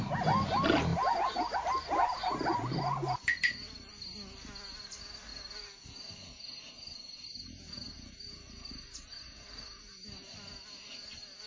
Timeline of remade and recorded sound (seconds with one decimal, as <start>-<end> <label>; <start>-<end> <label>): 0.0-5.3 recorded; 5.3-6.7 remade; 6.7-11.5 recorded